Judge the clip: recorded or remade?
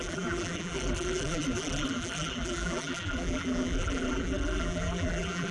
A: remade